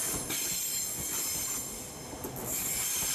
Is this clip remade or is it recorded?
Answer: recorded